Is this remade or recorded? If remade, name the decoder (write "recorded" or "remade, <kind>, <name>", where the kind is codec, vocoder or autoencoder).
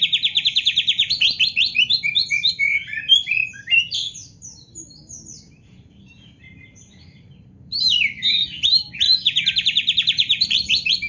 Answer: remade, vocoder, BigVGAN v2